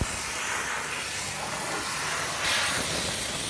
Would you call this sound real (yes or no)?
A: yes